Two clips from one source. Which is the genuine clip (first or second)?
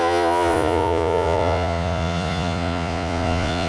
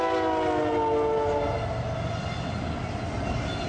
second